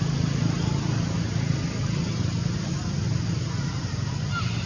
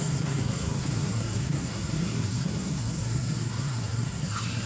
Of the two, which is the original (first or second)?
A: first